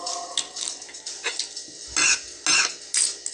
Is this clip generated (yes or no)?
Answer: no